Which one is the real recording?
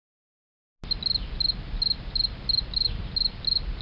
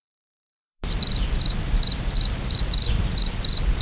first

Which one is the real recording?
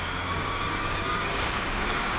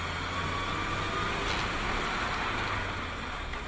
second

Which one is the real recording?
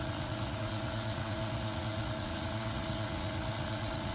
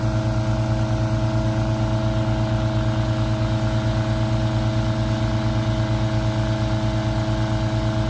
second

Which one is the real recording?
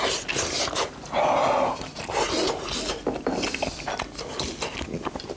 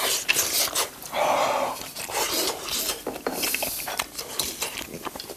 first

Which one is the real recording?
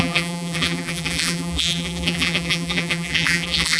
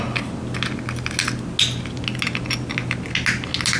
second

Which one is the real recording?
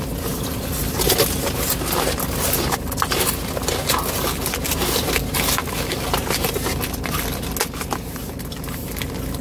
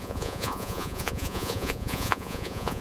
first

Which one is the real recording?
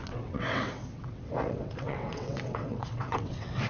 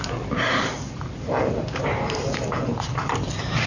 second